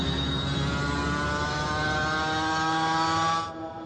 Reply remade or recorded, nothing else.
recorded